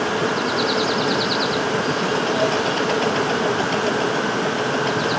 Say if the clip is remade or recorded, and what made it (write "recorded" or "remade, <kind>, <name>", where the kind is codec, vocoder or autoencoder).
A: recorded